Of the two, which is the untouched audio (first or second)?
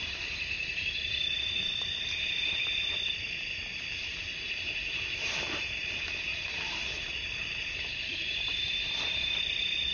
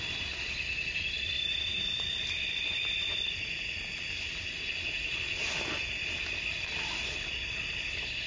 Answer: second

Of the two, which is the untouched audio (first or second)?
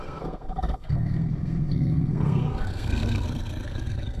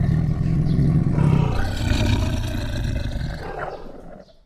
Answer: second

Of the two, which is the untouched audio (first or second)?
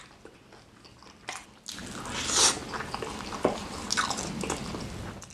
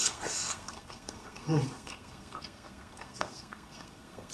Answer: first